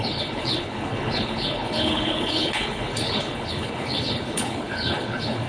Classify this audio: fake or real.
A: fake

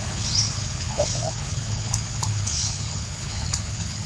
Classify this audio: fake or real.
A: fake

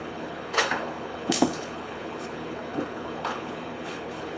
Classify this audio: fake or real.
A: fake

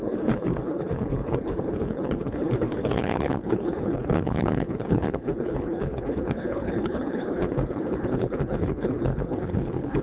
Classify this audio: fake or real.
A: fake